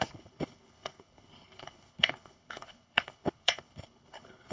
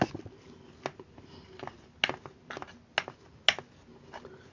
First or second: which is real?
second